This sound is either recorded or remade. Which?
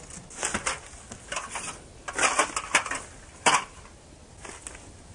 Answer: recorded